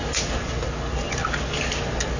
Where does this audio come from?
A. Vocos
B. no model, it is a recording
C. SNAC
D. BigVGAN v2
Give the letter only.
B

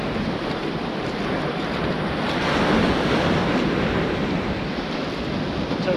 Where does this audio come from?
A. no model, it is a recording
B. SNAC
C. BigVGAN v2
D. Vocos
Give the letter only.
A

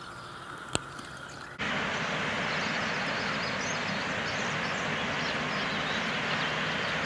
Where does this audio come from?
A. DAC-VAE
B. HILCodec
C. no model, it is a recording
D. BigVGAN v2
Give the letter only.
C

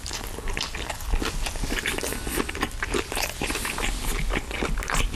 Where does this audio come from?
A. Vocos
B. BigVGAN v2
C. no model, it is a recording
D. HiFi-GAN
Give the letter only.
C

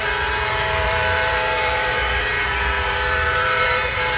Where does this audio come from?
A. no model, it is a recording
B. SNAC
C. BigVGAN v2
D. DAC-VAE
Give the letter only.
C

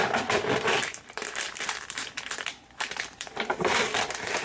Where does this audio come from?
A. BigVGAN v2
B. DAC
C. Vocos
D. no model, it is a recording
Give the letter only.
A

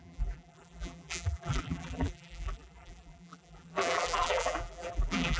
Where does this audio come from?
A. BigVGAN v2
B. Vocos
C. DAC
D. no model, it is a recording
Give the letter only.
A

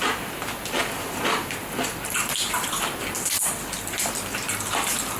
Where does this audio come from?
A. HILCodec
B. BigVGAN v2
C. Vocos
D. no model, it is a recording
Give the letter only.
B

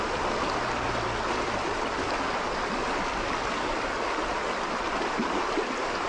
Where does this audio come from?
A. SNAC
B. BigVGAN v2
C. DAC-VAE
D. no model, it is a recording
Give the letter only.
D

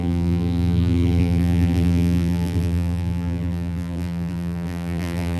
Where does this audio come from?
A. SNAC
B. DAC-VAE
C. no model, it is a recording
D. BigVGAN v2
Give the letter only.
D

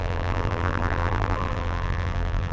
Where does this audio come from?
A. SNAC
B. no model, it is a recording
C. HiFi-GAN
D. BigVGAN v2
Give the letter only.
D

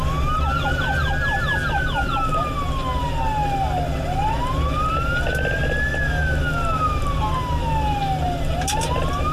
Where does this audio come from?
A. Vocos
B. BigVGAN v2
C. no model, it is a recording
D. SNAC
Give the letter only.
C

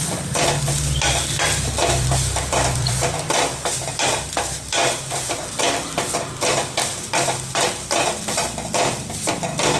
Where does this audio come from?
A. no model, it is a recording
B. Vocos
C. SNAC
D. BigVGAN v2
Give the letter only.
D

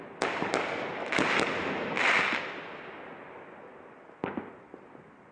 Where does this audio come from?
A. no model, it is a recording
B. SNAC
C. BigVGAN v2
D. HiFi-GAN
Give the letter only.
A